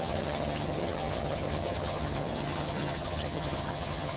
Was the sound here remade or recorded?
remade